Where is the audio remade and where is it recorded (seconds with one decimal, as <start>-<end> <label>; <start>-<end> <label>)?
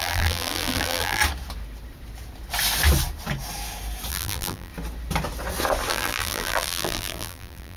0.0-1.2 remade; 1.2-4.1 recorded; 4.1-4.7 remade; 4.7-5.9 recorded; 5.9-7.8 remade